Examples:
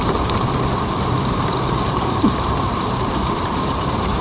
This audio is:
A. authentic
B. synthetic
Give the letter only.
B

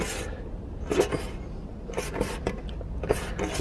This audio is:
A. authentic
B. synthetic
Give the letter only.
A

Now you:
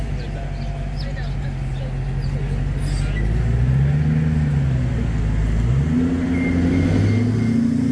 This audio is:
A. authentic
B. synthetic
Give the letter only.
A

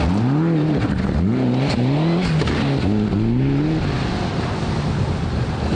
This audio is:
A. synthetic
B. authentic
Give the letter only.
B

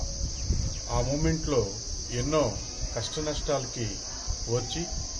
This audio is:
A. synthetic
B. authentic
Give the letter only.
B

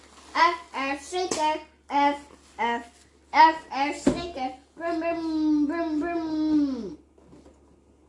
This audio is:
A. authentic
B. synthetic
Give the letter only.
A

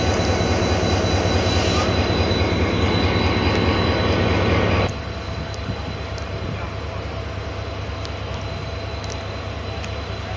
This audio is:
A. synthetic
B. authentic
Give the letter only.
B